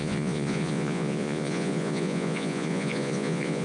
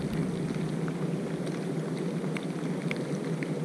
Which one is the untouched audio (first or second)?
second